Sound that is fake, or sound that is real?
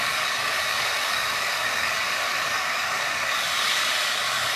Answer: fake